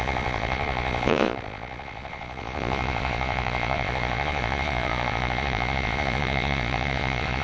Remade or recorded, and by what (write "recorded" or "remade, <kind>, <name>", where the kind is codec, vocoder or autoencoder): remade, vocoder, Vocos